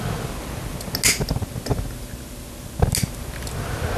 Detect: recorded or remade recorded